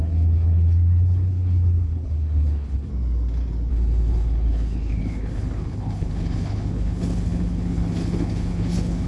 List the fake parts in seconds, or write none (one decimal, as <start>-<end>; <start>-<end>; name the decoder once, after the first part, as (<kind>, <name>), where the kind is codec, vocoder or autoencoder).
0.0-2.9 (codec, HILCodec); 3.7-9.1